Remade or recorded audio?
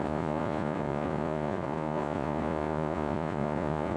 remade